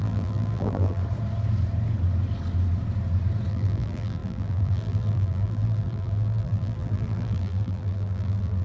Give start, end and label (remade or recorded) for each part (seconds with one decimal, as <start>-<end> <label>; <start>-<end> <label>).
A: 0.0-1.0 remade; 1.0-3.5 recorded; 3.5-8.6 remade